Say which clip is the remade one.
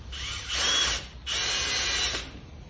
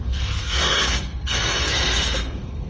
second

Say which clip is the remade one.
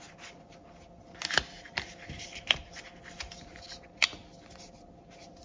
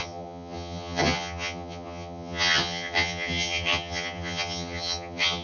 second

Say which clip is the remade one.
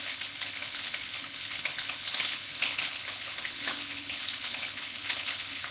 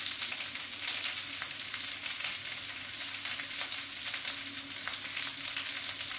first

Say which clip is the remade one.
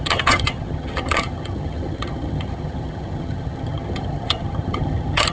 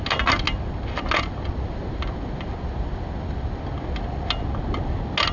first